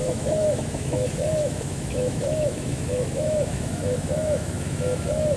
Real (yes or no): no